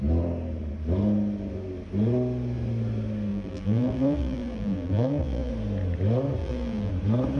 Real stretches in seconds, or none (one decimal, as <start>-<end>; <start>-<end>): 0.0-3.3; 5.5-6.4; 6.9-7.4